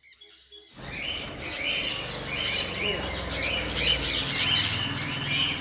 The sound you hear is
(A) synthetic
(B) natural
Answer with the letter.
B